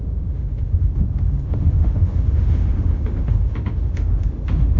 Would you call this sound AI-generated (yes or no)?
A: yes